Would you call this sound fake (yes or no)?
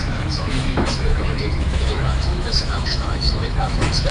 yes